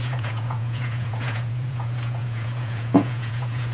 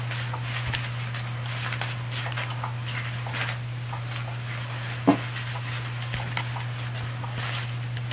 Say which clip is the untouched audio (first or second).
second